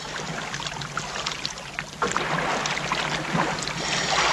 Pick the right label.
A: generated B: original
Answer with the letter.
B